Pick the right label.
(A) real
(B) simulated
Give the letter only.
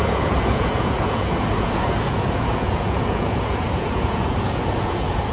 B